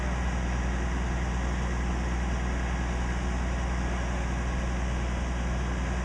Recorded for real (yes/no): yes